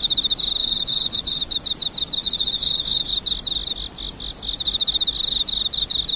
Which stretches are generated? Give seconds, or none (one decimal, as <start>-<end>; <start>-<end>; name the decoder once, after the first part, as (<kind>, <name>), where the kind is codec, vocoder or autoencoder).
0.6-1.4 (vocoder, Vocos); 2.2-3.1

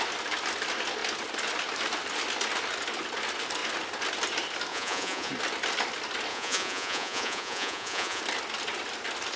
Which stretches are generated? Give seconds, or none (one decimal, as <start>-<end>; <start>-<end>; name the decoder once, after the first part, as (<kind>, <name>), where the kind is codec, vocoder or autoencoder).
4.7-5.3 (vocoder, Vocos); 6.3-8.2